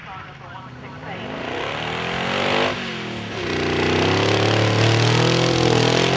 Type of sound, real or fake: real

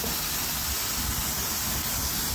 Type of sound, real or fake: real